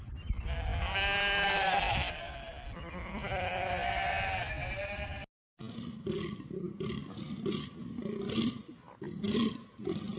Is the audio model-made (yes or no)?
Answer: no